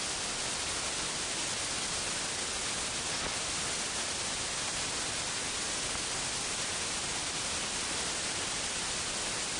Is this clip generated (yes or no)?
no